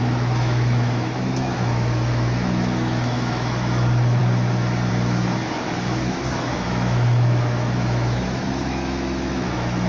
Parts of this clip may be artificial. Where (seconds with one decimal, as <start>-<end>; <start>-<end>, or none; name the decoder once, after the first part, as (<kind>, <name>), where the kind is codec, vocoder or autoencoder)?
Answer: 0.0-4.2 (autoencoder, DAC-VAE); 4.9-9.9